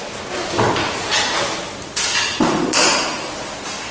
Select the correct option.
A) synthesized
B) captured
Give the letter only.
B